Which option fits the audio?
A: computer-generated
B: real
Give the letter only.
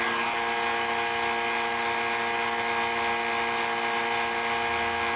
B